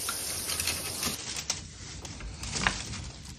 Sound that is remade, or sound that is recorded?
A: recorded